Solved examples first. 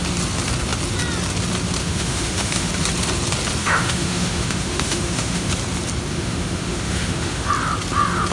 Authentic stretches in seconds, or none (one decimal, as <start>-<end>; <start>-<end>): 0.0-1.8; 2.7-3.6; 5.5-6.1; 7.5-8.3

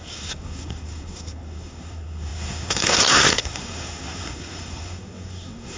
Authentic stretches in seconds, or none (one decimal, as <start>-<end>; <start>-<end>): none

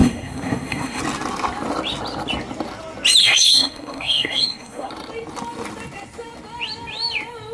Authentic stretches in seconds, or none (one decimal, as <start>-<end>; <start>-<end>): 1.0-3.2; 4.9-7.5

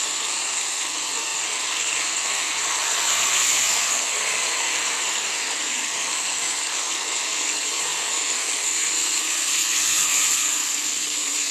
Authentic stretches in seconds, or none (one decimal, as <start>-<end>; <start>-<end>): none